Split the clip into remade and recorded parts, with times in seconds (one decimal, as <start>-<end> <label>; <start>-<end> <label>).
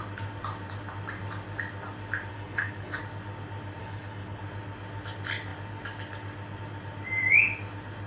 0.0-2.3 recorded; 2.3-3.0 remade; 3.0-3.8 recorded; 3.8-4.4 remade; 4.4-8.1 recorded